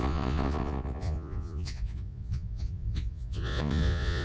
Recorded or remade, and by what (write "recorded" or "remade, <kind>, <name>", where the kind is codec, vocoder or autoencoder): remade, vocoder, Vocos